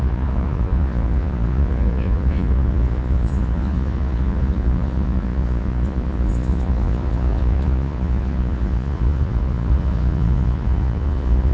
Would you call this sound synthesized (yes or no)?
yes